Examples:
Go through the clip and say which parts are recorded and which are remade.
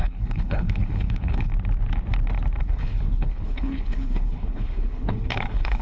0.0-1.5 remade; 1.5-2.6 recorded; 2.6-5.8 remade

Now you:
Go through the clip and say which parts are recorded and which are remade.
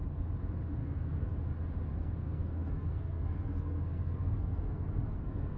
0.0-0.8 recorded; 0.8-1.3 remade; 1.3-1.9 recorded; 1.9-5.6 remade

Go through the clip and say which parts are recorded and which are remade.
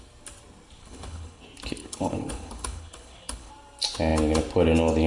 0.0-0.8 recorded; 0.8-1.4 remade; 1.4-1.8 recorded; 1.8-3.5 remade; 3.5-5.1 recorded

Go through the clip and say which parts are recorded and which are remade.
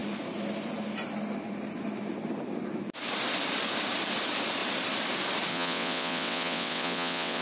0.0-5.5 recorded; 5.5-7.4 remade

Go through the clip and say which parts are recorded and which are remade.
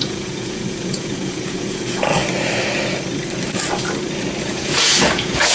0.0-2.2 remade; 2.2-4.4 recorded; 4.4-5.5 remade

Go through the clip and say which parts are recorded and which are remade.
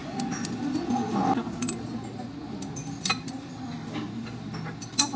0.0-5.2 recorded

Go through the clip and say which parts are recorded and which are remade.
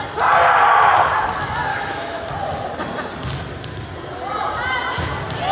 0.0-1.7 recorded; 1.7-2.3 remade; 2.3-5.5 recorded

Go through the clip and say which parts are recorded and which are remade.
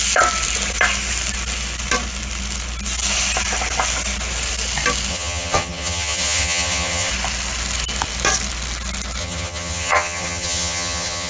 0.0-5.1 recorded; 5.1-7.1 remade; 7.1-9.2 recorded; 9.2-11.3 remade